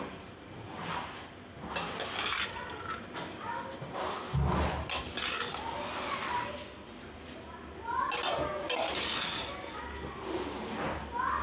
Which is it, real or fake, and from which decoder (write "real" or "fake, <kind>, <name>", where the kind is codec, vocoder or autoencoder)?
real